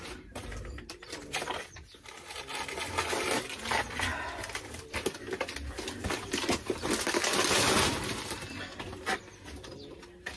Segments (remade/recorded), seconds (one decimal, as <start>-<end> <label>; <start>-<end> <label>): 0.0-10.4 recorded